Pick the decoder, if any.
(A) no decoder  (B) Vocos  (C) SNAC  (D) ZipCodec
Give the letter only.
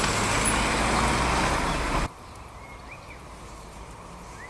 A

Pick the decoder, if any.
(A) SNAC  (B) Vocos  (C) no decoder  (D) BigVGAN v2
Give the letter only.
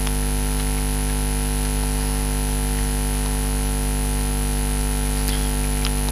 C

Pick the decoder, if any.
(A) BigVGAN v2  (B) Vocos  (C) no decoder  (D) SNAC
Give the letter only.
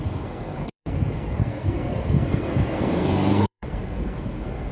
D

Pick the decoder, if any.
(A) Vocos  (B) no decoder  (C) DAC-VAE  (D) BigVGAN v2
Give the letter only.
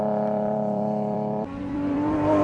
D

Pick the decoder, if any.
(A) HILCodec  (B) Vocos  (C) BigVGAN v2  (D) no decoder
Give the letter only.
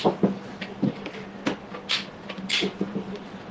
D